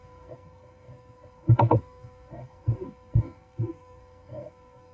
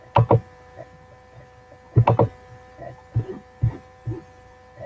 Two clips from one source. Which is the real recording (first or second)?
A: second